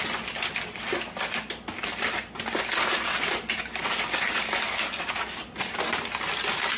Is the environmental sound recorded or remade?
recorded